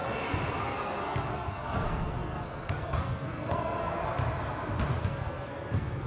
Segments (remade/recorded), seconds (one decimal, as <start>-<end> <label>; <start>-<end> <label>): 0.0-0.6 recorded; 0.6-4.0 remade; 4.0-5.0 recorded; 5.0-6.1 remade